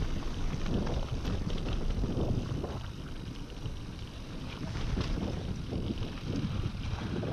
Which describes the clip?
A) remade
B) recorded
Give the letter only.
B